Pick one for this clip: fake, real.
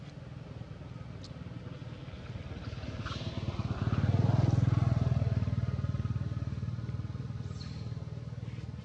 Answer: real